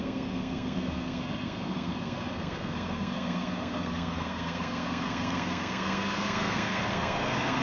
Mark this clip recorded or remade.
remade